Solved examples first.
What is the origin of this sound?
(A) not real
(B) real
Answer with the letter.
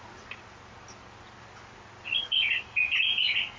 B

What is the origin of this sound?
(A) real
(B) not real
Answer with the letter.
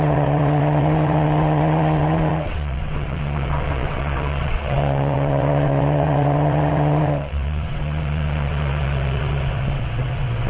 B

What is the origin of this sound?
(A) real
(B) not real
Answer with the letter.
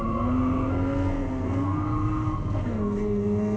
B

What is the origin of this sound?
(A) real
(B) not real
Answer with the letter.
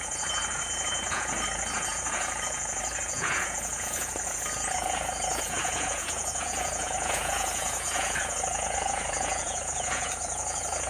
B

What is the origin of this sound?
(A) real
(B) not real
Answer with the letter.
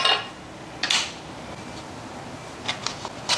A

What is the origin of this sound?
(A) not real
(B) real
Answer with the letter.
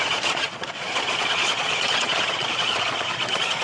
A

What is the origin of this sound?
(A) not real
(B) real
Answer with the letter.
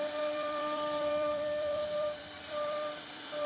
A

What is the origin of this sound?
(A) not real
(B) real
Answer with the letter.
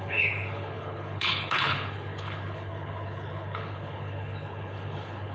A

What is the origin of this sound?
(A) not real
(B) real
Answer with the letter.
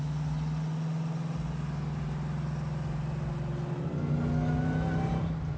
B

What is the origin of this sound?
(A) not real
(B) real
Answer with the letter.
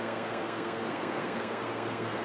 A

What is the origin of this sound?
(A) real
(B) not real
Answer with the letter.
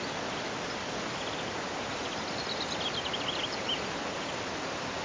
A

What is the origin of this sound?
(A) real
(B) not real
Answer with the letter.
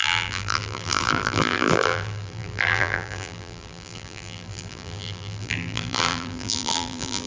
B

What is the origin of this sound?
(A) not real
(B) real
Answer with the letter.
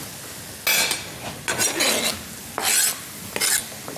B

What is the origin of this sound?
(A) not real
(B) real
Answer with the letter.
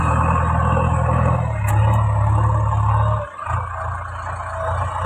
B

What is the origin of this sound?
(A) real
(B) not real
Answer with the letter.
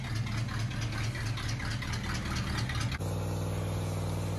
A